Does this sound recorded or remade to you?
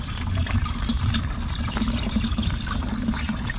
remade